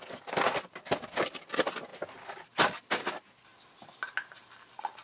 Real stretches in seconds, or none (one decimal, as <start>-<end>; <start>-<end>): 0.0-5.0